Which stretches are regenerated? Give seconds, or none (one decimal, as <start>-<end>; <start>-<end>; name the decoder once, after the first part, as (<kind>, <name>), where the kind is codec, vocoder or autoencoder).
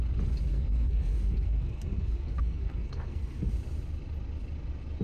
0.5-3.5 (codec, SNAC)